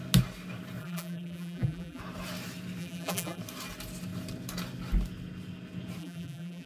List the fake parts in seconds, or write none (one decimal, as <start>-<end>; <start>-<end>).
0.8-2.0; 2.8-3.4; 6.0-6.7